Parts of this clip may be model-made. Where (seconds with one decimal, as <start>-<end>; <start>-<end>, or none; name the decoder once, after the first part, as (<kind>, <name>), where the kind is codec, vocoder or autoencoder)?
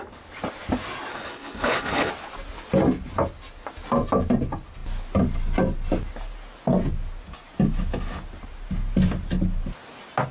1.1-2.1 (codec, HILCodec)